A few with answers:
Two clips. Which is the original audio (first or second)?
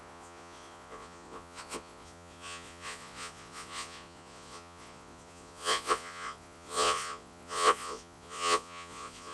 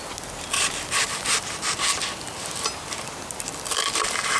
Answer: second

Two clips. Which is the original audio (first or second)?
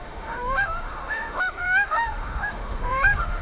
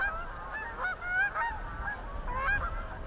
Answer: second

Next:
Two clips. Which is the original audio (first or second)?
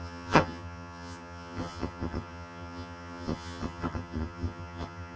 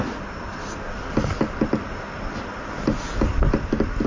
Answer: second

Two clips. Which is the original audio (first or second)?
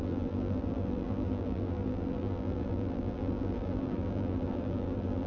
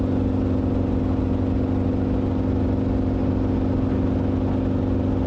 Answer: second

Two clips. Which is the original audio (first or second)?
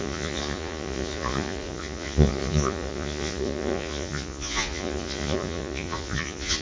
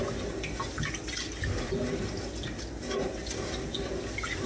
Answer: second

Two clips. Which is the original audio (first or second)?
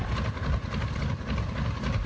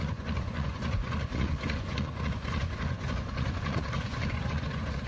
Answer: first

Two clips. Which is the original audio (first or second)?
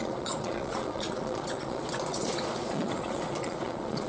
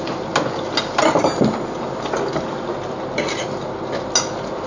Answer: second